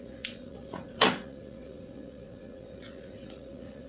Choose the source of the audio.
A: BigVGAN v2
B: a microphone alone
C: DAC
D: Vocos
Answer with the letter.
D